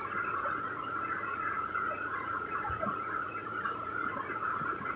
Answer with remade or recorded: remade